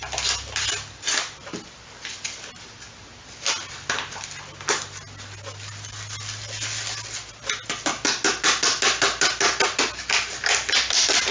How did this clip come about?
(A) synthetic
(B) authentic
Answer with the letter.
B